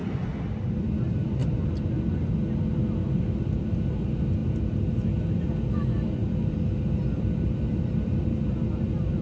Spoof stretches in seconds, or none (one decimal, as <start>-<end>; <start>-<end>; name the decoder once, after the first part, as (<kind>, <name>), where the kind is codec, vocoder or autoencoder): 6.2-9.2 (vocoder, BigVGAN v2)